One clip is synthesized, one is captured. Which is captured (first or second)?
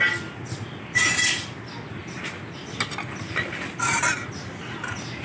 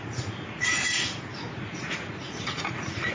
first